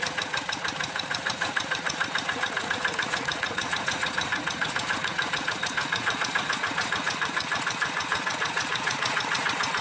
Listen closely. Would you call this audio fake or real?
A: fake